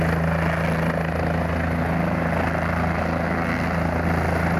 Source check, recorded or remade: recorded